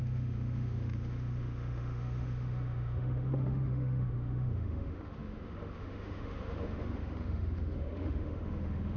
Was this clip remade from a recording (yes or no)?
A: yes